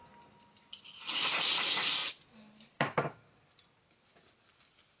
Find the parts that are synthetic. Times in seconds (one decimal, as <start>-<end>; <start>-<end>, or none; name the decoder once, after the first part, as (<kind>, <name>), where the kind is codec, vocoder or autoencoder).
none